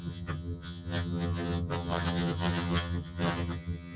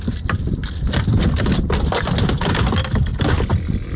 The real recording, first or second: second